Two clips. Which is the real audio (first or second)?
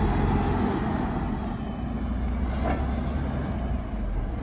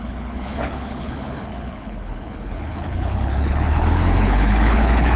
first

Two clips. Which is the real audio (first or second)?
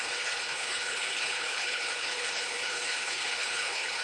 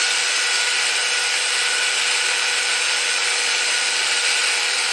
second